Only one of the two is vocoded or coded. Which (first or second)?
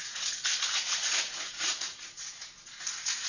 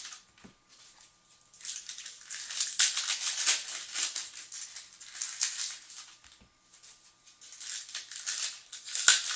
first